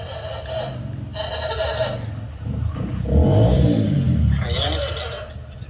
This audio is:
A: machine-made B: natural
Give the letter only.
B